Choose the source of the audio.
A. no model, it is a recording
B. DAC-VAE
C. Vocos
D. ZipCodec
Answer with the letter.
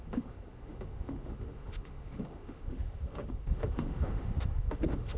B